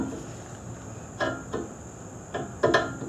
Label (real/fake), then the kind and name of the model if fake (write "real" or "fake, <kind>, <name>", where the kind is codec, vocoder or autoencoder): real